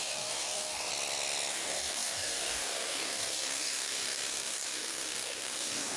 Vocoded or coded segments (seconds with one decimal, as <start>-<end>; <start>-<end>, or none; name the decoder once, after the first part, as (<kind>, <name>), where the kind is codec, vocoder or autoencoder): 0.0-0.9 (codec, DAC); 1.5-6.0